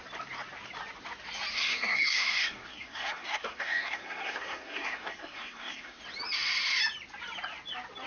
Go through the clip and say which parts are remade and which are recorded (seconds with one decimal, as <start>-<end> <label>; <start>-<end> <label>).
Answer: 0.0-1.5 recorded; 1.5-6.0 remade; 6.0-8.1 recorded